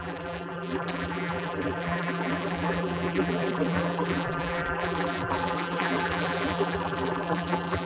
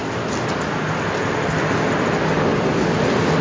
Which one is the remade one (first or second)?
first